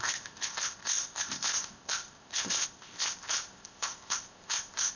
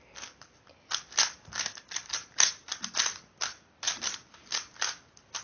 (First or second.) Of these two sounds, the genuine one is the second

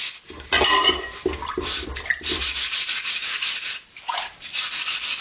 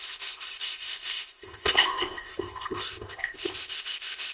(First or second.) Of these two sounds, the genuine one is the first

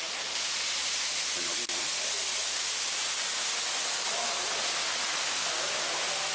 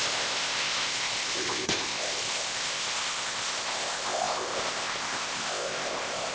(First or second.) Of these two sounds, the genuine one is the first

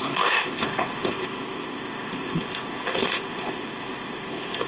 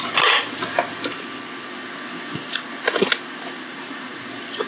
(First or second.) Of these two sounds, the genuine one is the second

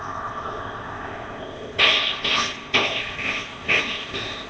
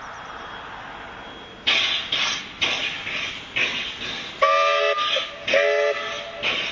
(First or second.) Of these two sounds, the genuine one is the second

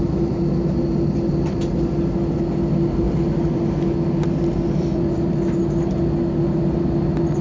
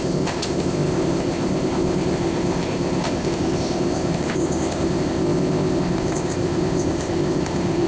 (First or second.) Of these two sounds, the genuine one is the first